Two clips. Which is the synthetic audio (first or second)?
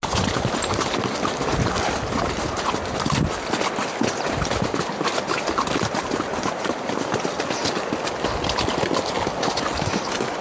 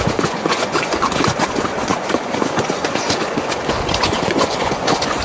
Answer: second